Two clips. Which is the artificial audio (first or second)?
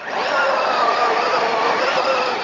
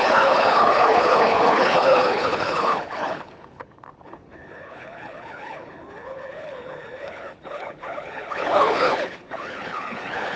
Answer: second